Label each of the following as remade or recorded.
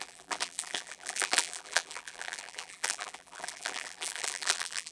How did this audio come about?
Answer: remade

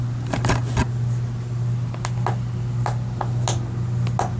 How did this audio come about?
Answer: recorded